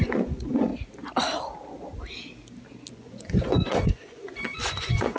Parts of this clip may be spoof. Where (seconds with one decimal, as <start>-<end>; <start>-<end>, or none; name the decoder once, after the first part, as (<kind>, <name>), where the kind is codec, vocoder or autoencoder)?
0.0-0.7 (vocoder, Vocos); 2.9-5.2